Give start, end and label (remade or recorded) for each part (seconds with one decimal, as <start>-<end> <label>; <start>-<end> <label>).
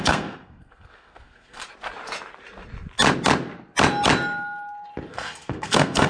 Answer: 0.0-1.6 remade; 1.6-5.1 recorded; 5.1-6.1 remade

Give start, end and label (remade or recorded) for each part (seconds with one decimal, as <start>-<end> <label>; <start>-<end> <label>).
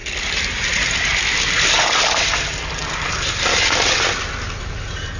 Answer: 0.0-5.2 recorded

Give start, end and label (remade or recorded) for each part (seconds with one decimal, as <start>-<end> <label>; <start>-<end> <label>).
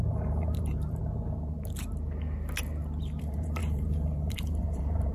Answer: 0.0-1.0 remade; 1.0-3.2 recorded; 3.2-5.1 remade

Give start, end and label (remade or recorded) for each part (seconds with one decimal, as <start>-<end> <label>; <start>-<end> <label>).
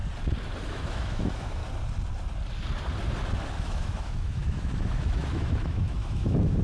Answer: 0.0-0.7 recorded; 0.7-1.6 remade; 1.6-3.6 recorded; 3.6-6.6 remade